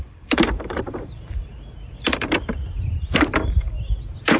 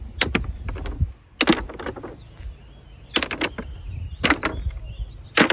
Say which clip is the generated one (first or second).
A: first